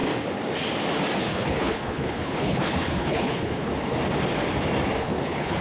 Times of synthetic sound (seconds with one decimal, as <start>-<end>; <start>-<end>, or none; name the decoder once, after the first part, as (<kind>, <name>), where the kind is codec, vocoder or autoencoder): 1.2-3.7 (codec, HILCodec); 5.0-5.6